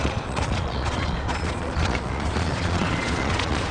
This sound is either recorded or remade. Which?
remade